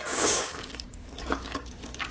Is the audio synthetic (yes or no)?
yes